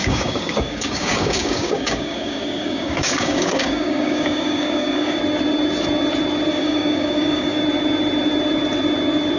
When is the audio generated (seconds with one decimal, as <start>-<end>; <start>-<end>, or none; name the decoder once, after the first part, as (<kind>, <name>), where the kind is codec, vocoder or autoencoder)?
0.0-5.2 (codec, DAC); 6.5-7.6